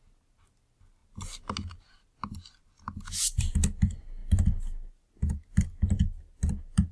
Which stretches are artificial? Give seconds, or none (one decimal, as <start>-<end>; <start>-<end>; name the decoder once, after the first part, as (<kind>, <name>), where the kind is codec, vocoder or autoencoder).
none